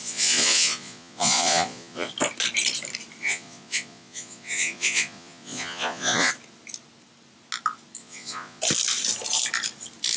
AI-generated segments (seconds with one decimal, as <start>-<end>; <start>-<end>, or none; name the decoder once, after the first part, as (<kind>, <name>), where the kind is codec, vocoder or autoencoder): 0.0-2.1 (vocoder, Vocos); 3.2-6.3; 8.0-8.6

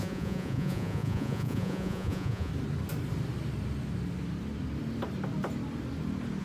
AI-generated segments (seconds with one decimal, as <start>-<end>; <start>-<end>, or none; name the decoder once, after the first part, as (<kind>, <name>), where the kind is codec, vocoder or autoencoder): 0.0-2.5 (vocoder, Vocos)

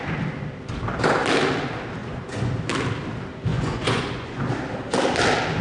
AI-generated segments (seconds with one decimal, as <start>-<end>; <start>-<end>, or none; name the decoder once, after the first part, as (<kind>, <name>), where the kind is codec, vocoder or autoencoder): 2.0-2.5 (vocoder, Vocos); 3.5-4.4

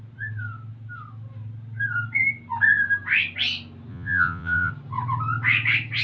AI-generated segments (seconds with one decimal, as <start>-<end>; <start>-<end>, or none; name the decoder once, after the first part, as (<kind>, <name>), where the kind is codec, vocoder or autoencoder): 3.9-4.7 (vocoder, Vocos)

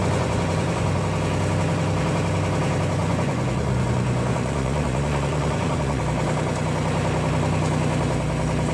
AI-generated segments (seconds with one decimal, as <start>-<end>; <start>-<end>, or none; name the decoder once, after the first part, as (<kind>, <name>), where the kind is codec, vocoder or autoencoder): 0.0-1.0 (vocoder, Vocos); 3.0-6.0